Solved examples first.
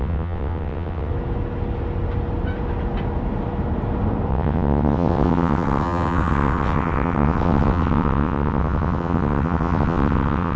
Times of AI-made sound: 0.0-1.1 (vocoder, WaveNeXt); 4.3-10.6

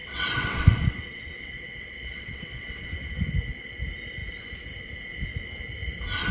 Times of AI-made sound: 0.0-3.8 (vocoder, WaveNeXt)

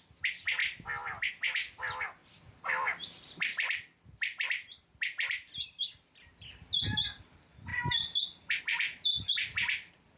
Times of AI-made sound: none

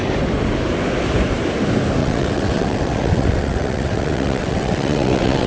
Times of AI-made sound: 2.0-5.5 (vocoder, WaveNeXt)

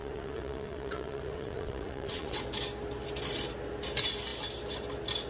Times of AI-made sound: 0.0-2.4 (vocoder, WaveNeXt)

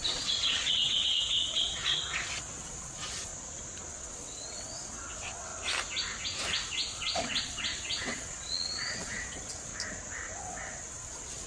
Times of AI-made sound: 0.0-3.3 (vocoder, WaveNeXt); 3.9-5.5; 6.7-9.7; 10.4-11.5

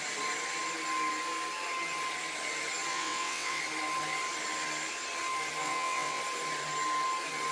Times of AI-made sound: 2.9-3.6 (vocoder, WaveNeXt); 5.6-6.2